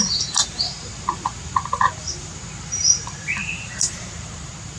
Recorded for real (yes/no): no